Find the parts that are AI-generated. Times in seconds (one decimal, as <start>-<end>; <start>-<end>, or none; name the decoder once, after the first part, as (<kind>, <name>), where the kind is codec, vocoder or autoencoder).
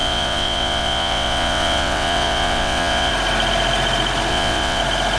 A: 0.0-3.1 (vocoder, WaveNeXt); 4.3-4.8